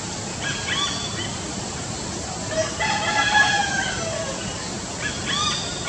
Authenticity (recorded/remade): recorded